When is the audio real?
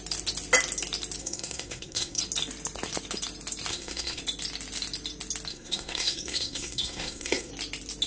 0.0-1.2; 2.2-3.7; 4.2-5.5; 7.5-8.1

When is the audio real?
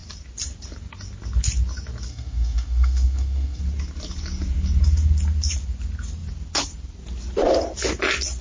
0.0-2.1; 3.6-8.4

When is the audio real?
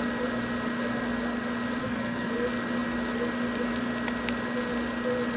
0.0-1.8; 2.3-5.4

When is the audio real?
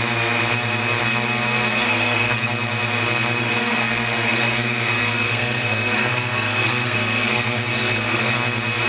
0.0-1.7; 2.5-3.4; 8.3-8.9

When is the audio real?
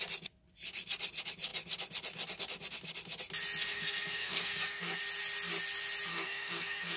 0.0-3.7; 5.0-6.1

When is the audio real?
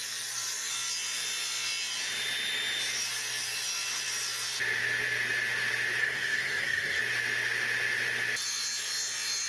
0.0-6.0; 7.0-9.5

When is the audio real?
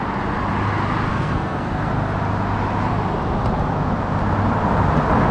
0.0-1.1; 1.9-5.3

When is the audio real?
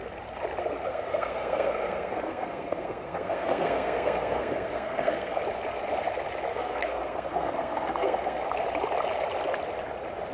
0.0-0.9; 5.4-6.5; 8.4-10.3